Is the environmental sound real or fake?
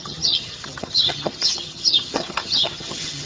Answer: fake